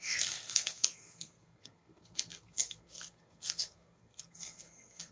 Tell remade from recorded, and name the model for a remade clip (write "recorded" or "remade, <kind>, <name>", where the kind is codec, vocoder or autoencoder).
remade, codec, SNAC